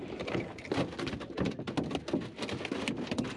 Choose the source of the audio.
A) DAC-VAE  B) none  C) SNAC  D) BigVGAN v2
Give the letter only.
B